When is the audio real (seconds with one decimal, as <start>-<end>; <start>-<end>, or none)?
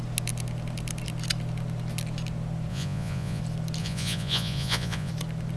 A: 0.0-2.7; 3.4-3.8; 5.1-5.6